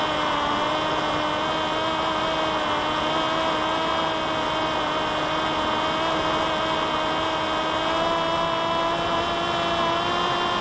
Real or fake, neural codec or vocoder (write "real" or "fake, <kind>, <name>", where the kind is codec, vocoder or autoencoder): real